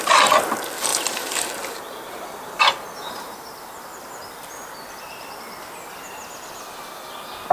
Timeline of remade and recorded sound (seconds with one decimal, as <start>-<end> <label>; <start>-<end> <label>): 0.0-0.9 recorded; 0.9-5.4 remade; 5.4-7.5 recorded